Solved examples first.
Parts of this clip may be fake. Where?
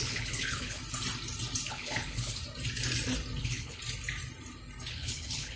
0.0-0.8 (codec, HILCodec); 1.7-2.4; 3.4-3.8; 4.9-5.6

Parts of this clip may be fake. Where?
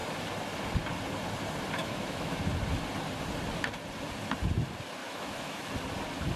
1.8-2.4 (autoencoder, DAC-VAE); 5.0-5.7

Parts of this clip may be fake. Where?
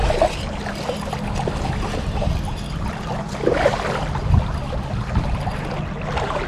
none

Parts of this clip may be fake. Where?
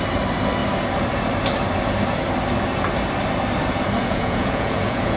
4.0-5.2 (vocoder, Vocos)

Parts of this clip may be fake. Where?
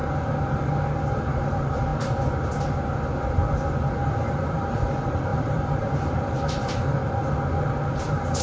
1.1-1.9 (vocoder, BigVGAN v2); 4.3-7.0; 8.0-8.4